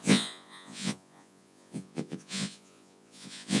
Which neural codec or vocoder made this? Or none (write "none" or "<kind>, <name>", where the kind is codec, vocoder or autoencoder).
vocoder, Vocos